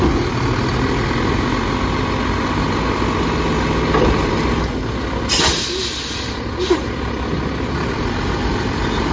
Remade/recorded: recorded